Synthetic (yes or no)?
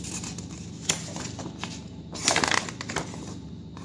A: no